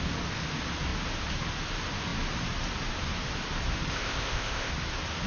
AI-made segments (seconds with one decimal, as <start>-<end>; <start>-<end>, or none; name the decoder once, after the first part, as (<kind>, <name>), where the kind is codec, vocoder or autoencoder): 3.9-4.7 (codec, ZipCodec)

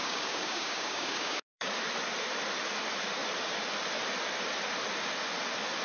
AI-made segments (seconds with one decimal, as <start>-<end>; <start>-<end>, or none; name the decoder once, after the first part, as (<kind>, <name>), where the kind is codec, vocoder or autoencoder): 0.0-1.7 (codec, DAC)

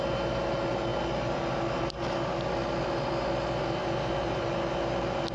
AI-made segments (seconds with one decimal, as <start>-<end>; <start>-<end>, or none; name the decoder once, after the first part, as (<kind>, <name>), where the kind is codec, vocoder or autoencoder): none

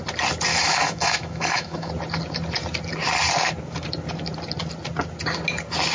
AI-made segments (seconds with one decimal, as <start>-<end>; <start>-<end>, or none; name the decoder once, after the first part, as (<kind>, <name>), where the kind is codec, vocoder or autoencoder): 0.5-1.9 (autoencoder, DAC-VAE)